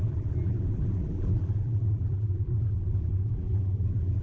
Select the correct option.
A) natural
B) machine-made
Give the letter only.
B